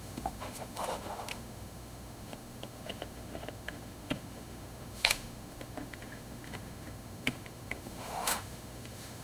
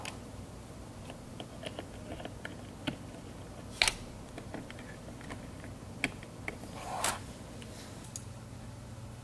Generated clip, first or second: first